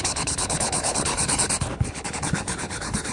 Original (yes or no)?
no